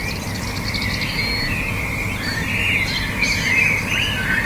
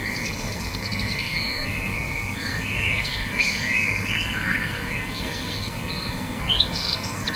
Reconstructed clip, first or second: second